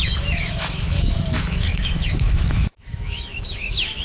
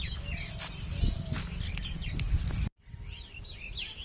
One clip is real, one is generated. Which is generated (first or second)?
first